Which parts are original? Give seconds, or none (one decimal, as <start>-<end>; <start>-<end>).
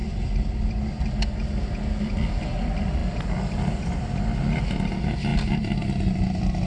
0.0-6.7